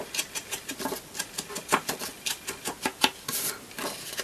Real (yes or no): yes